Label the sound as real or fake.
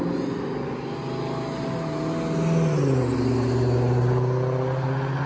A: real